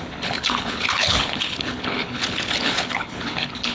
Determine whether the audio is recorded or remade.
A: remade